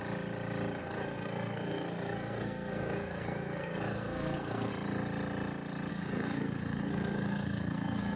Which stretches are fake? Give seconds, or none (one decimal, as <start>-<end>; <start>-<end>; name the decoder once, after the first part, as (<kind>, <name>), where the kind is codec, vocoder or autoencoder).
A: 0.8-4.7 (codec, SNAC); 5.9-8.2